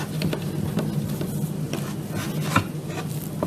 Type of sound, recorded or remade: recorded